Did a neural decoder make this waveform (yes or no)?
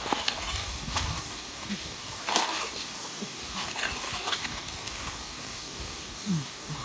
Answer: yes